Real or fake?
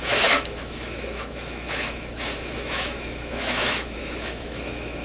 fake